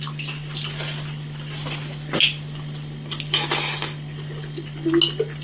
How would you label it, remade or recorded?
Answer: recorded